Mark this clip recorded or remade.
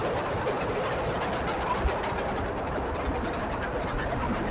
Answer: recorded